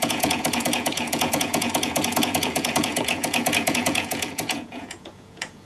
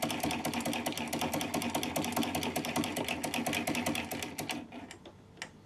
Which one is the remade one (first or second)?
first